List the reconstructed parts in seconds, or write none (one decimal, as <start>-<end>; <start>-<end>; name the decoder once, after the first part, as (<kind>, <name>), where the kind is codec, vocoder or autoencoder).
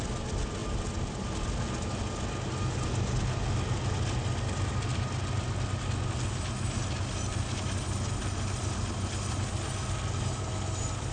none